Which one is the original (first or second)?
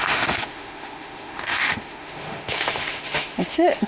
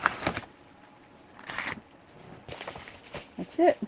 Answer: second